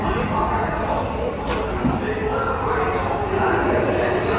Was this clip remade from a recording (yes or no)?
no